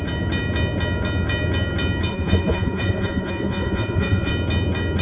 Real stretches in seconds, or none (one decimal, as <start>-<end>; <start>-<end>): 0.0-2.1; 4.3-5.0